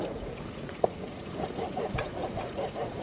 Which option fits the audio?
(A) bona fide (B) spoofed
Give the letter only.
B